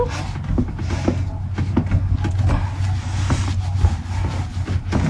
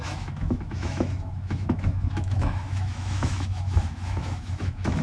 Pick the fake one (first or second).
second